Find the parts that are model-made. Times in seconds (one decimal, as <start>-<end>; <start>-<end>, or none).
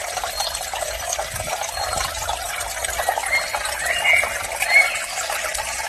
none